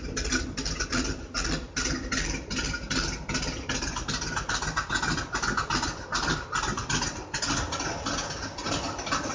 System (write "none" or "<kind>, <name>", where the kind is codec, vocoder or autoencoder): none